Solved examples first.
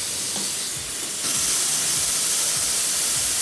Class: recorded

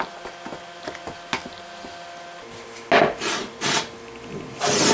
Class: recorded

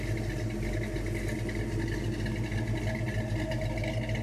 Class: recorded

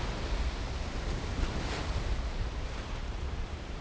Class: recorded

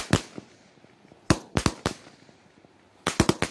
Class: recorded